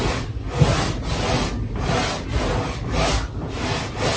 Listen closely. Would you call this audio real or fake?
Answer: real